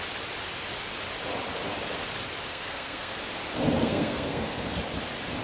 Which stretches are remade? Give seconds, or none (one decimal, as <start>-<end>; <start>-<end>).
2.5-3.2; 3.8-4.8